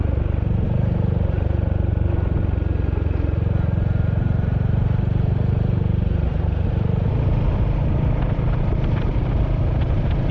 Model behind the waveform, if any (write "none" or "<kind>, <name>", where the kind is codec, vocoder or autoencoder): none